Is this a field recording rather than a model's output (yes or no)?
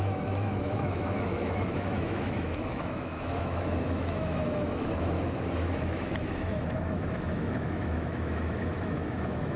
no